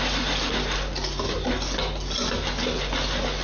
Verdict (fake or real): real